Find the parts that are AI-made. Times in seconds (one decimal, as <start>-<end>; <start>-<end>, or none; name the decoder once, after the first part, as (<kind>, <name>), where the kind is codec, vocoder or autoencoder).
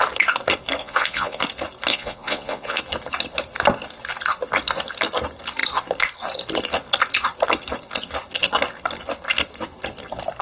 0.8-1.4 (vocoder, Vocos); 1.9-2.8